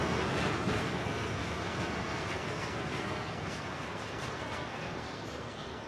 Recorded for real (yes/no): no